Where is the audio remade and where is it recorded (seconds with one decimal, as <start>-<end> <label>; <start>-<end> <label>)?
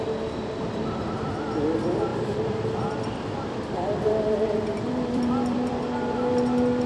0.0-2.1 recorded; 2.1-5.7 remade; 5.7-6.9 recorded